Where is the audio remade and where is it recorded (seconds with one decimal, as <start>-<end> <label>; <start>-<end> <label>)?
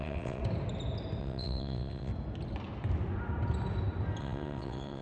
0.0-0.4 remade; 0.4-1.2 recorded; 1.2-2.1 remade; 2.1-4.2 recorded; 4.2-5.0 remade